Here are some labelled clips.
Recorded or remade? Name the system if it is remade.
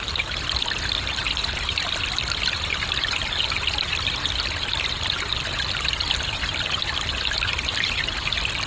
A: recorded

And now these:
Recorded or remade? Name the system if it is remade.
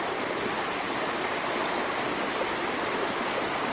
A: recorded